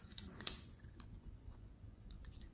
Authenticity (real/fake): fake